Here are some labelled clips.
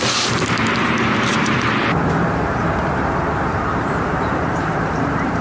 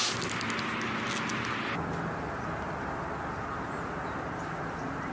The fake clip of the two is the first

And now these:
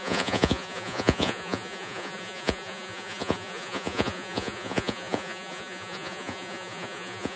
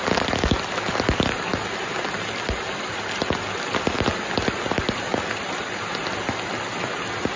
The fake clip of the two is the first